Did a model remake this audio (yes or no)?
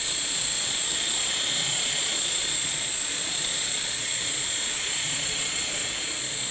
yes